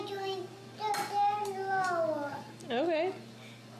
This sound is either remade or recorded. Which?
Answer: recorded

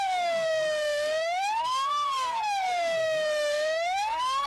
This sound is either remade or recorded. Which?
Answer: remade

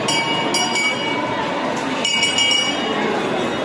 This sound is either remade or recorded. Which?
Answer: recorded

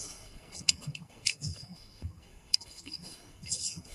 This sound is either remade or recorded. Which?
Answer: remade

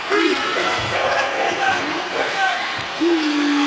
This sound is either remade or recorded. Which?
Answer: remade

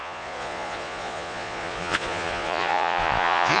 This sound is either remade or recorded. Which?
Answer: remade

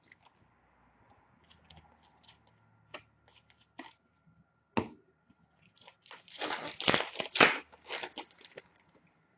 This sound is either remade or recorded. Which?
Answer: recorded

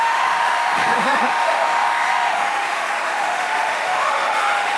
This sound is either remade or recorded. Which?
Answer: remade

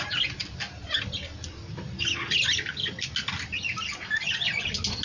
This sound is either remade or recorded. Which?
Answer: recorded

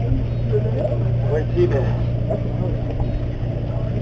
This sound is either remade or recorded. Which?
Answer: recorded